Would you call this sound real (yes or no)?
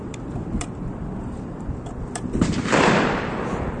no